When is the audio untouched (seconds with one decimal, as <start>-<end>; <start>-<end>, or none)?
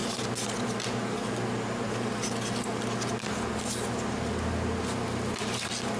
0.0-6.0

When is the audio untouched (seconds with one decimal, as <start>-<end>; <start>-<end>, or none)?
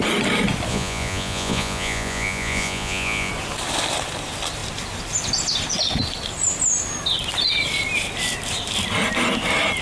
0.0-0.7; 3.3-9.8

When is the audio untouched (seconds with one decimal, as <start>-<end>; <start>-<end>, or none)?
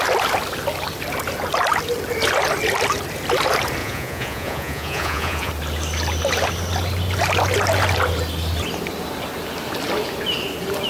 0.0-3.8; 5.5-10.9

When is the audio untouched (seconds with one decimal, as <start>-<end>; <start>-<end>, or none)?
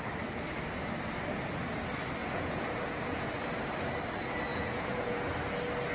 0.0-2.2; 3.3-4.5; 5.2-5.9